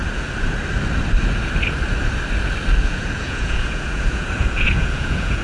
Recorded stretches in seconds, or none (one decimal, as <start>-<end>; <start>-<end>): 0.0-2.8